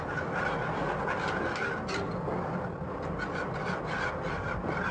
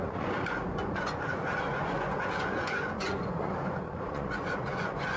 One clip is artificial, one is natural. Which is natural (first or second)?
first